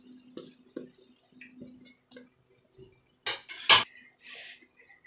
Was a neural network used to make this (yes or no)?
no